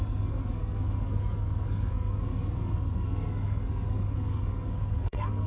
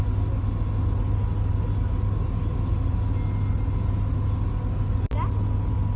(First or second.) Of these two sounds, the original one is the second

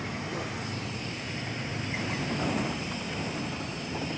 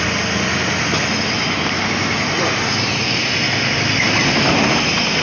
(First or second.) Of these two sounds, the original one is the second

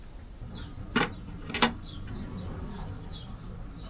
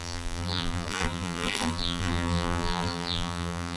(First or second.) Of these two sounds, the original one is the first